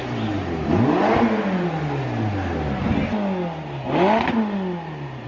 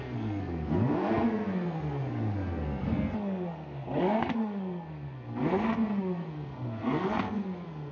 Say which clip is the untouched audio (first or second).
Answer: first